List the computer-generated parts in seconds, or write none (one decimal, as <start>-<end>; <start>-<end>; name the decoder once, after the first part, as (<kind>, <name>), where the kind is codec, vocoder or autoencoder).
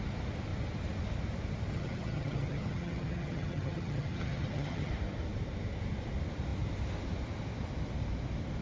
1.7-4.9 (vocoder, HiFi-GAN)